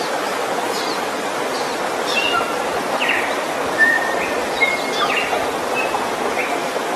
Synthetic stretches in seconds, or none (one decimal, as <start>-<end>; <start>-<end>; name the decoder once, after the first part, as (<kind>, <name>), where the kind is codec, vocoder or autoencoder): none